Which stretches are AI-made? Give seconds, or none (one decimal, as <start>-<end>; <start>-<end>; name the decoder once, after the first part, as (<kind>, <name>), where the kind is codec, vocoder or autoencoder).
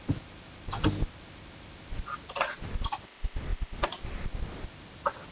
none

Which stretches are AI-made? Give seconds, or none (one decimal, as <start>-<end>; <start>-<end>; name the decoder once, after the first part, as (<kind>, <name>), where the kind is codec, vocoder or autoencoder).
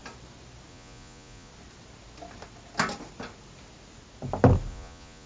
0.7-1.5 (vocoder, Vocos); 4.7-5.3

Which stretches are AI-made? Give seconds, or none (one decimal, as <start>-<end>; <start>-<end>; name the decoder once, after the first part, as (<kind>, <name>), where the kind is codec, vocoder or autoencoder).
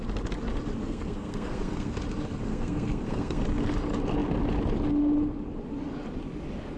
0.8-1.9 (codec, SNAC); 2.4-3.4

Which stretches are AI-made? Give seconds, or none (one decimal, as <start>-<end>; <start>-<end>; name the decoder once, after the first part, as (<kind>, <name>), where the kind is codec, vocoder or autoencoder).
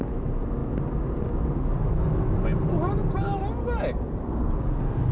none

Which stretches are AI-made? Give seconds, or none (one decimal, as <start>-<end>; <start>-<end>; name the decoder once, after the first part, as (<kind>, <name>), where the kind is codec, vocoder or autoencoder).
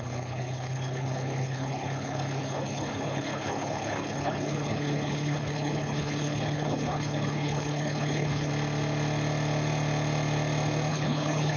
0.0-8.5 (codec, HILCodec); 10.9-11.6